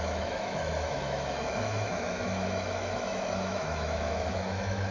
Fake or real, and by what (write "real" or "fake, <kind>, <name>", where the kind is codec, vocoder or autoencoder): fake, autoencoder, DAC-VAE